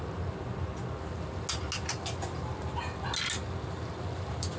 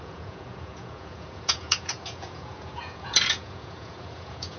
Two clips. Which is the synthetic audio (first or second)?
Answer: second